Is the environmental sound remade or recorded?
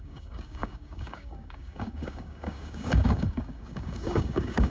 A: remade